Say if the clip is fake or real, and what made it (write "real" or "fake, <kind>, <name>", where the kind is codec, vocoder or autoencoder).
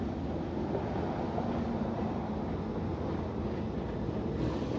real